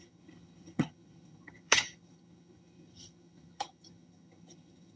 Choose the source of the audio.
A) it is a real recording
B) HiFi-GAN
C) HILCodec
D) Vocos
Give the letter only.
B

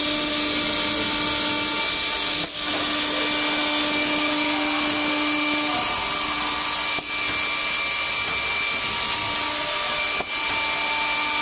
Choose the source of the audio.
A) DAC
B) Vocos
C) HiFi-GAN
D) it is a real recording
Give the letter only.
D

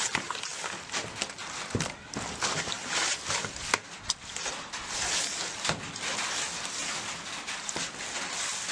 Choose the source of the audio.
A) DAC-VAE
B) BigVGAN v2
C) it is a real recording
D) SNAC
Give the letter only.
C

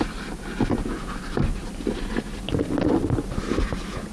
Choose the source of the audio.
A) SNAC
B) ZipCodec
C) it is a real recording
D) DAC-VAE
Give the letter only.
C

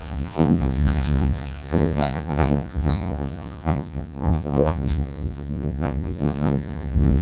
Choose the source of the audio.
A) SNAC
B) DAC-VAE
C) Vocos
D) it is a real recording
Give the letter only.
C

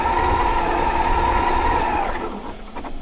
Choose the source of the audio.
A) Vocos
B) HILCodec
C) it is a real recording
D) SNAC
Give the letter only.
A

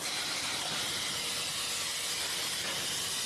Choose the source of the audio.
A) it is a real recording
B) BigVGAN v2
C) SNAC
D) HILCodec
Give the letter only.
A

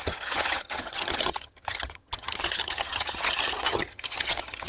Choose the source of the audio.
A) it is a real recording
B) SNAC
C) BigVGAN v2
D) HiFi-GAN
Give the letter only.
D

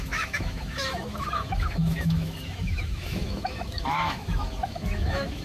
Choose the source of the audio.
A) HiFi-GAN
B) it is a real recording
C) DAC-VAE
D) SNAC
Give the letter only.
C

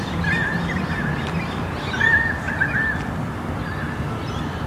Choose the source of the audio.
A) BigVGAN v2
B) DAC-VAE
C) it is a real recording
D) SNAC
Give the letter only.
C